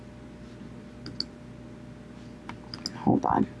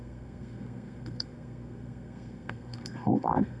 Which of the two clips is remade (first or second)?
second